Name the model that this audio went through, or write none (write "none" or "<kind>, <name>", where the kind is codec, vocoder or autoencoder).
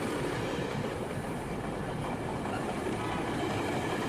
none